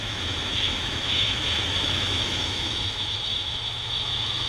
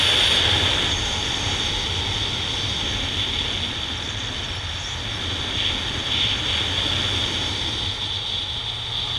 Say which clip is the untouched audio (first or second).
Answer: second